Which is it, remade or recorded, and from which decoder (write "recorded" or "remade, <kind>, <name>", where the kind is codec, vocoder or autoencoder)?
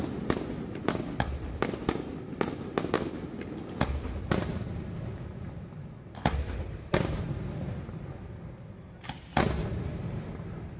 recorded